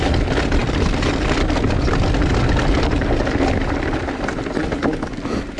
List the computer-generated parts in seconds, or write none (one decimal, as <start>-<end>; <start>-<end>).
none